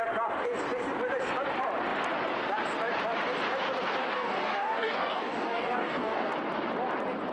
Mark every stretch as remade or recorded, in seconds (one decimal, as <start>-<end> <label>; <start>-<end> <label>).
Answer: 0.0-4.0 recorded; 4.0-6.3 remade; 6.3-7.3 recorded